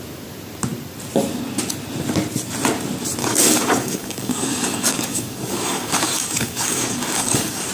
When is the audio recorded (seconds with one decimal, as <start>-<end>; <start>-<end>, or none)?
0.0-3.2